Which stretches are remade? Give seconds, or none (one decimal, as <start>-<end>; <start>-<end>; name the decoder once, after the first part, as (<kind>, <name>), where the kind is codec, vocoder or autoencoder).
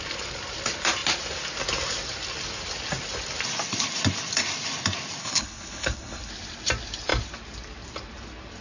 5.2-6.3 (codec, HILCodec)